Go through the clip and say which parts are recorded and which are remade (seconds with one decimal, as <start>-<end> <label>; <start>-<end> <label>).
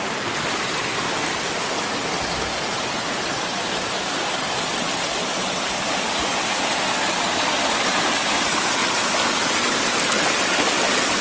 0.0-11.2 recorded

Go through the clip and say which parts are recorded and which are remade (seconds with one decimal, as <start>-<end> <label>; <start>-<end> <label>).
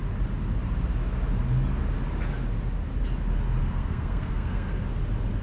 0.0-3.6 recorded; 3.6-4.8 remade; 4.8-5.4 recorded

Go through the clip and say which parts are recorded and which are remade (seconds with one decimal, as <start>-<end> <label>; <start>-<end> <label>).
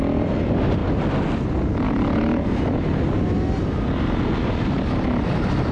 0.0-5.7 recorded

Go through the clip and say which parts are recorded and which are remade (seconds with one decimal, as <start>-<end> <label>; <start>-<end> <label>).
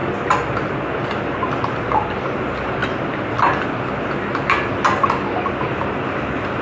0.0-6.6 recorded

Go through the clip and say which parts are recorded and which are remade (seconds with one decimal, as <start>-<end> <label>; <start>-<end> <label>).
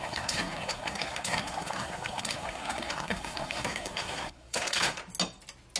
0.0-5.0 remade; 5.0-5.8 recorded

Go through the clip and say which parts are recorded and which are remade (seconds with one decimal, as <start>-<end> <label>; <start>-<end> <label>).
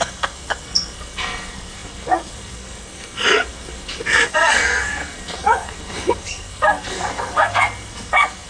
0.0-8.5 remade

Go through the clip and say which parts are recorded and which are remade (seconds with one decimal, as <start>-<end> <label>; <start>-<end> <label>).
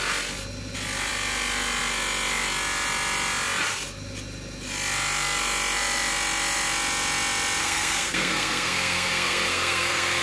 0.0-7.6 recorded; 7.6-10.2 remade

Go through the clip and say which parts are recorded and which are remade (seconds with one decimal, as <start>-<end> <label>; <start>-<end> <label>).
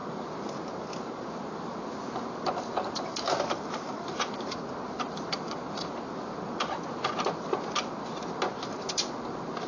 0.0-9.7 recorded